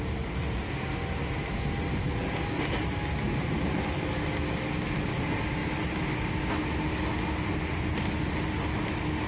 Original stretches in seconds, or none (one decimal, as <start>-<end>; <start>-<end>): 0.0-9.3